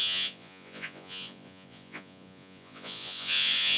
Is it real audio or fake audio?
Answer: fake